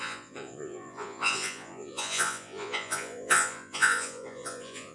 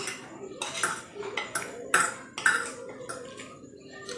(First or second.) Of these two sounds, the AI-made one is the first